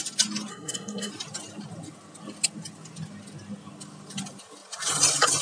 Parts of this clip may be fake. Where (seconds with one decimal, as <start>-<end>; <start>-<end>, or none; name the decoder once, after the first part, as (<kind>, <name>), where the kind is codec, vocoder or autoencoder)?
0.5-1.1 (codec, SNAC)